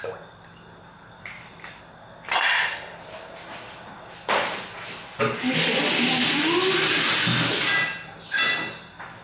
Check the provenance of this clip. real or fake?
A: real